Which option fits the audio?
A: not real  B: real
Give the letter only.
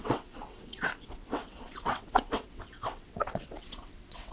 A